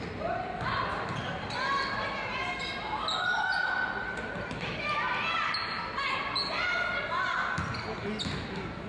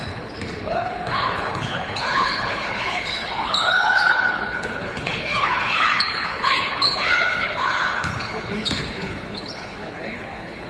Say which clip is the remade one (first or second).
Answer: second